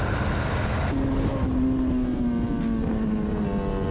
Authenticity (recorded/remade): recorded